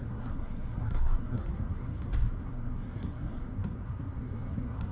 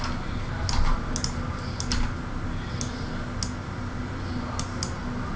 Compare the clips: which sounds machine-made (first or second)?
first